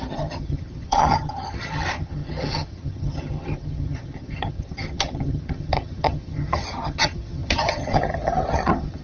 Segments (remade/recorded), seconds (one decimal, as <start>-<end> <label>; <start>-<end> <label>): 0.0-9.0 remade